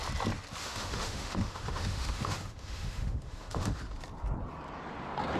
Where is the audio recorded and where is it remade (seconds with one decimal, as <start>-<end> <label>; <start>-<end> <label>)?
0.0-0.6 recorded; 0.6-3.8 remade; 3.8-5.4 recorded